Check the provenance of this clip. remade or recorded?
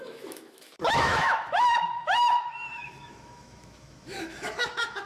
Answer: remade